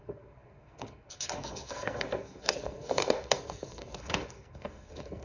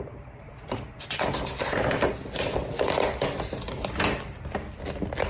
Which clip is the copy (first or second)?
first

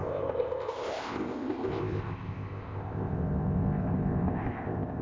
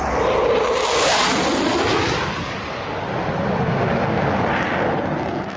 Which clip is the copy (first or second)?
first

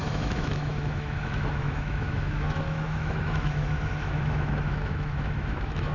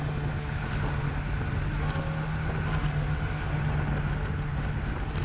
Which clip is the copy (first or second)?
first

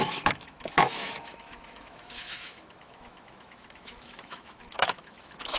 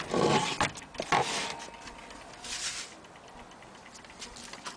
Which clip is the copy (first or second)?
first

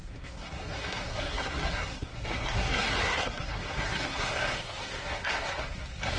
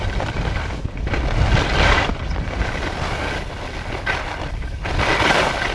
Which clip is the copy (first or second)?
first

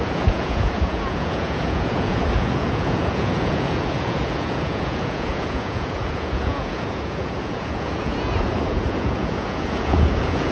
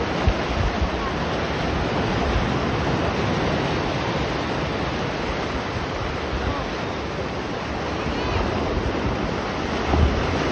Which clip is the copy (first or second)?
first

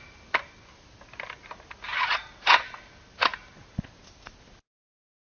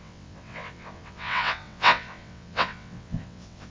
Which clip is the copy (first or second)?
second